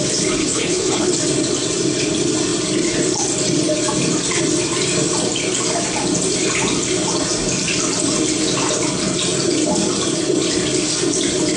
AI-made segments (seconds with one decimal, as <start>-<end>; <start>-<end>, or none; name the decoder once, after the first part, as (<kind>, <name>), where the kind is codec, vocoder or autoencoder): 0.4-1.1 (codec, HILCodec)